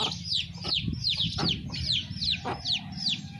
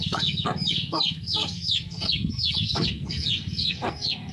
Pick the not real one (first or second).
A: second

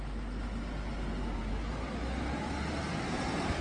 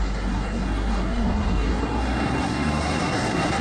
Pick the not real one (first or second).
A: second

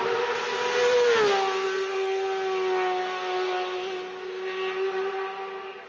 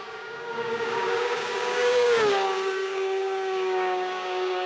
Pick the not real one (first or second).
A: second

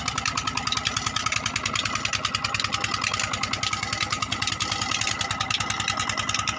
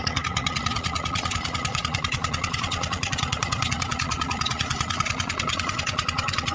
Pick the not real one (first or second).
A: second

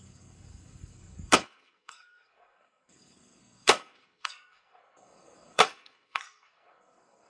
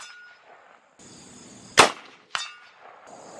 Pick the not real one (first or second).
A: first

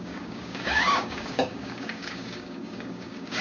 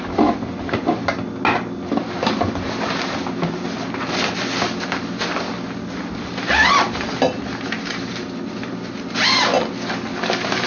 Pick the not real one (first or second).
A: first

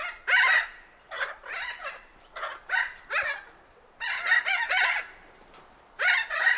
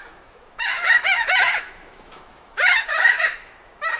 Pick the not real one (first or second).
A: second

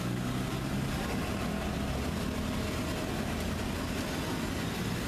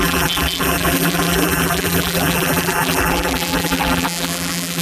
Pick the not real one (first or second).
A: second